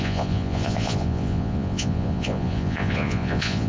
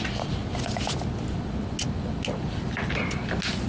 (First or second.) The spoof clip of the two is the first